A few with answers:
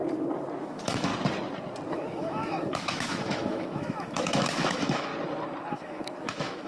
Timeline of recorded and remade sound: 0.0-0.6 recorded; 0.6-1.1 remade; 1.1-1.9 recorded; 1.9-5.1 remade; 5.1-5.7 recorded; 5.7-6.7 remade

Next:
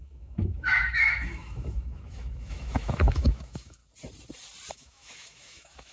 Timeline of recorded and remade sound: 0.0-3.8 remade; 3.8-4.7 recorded; 4.7-5.9 remade